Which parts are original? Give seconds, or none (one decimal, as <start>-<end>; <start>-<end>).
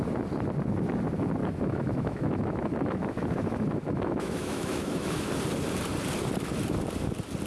0.0-1.4; 5.3-7.5